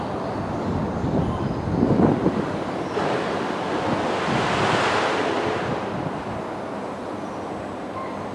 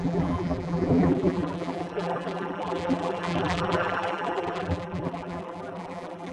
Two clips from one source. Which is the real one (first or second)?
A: first